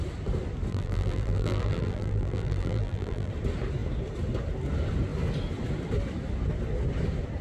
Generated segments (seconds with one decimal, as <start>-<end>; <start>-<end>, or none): 0.7-3.3